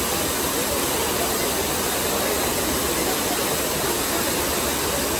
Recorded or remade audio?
recorded